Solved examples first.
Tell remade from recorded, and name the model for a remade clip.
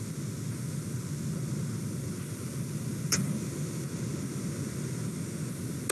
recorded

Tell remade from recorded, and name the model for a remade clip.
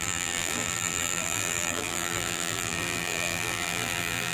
remade, vocoder, BigVGAN v2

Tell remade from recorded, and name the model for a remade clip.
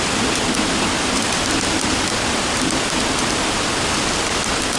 recorded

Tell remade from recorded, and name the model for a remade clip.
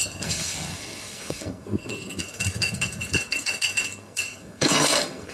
remade, codec, SNAC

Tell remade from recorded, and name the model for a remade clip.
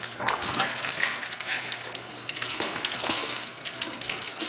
remade, codec, SNAC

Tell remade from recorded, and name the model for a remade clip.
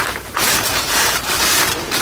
remade, vocoder, BigVGAN v2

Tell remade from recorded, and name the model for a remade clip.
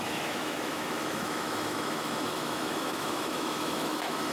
remade, autoencoder, DAC-VAE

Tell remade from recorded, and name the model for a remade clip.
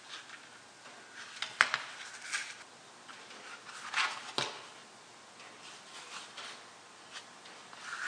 recorded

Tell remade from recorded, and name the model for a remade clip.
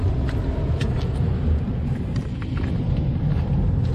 recorded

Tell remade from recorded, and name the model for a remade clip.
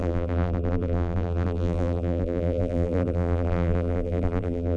remade, vocoder, BigVGAN v2